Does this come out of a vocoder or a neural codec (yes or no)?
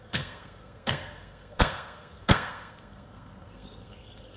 yes